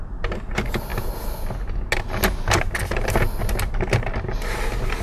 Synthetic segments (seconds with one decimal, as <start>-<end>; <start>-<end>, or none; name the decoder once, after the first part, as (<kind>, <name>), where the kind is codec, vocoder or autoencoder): none